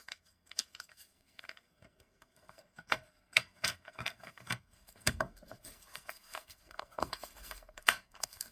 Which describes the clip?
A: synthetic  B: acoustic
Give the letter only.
A